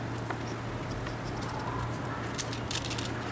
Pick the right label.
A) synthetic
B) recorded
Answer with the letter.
B